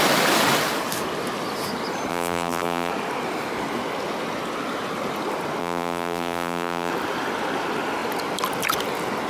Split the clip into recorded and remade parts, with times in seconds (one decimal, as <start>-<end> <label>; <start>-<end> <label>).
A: 0.0-2.1 recorded; 2.1-2.9 remade; 2.9-5.6 recorded; 5.6-6.9 remade; 6.9-9.3 recorded